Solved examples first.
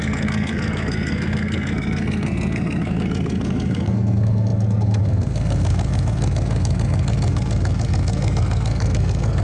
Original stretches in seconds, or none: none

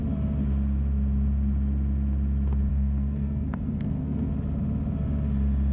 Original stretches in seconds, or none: 0.0-2.7; 4.3-5.7

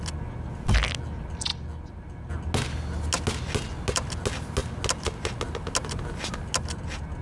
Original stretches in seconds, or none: 0.0-7.2

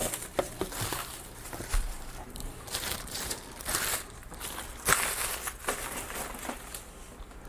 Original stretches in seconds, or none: 4.4-7.5

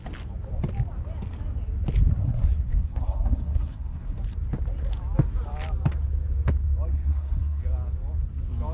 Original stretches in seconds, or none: 0.0-2.2; 4.2-6.9; 7.6-8.7

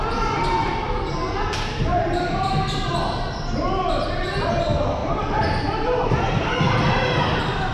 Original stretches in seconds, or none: 0.0-5.0; 6.5-7.7

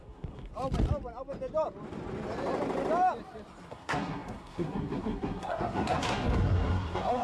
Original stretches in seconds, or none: 0.5-3.7